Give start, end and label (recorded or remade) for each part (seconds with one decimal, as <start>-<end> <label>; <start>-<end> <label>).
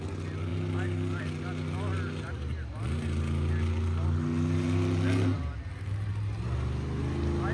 0.0-7.5 recorded